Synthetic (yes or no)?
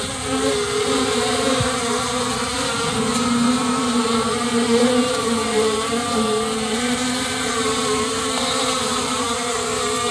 yes